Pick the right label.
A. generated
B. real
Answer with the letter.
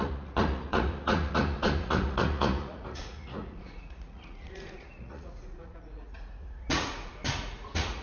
A